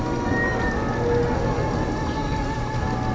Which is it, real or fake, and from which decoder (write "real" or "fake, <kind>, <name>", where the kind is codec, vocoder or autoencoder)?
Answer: real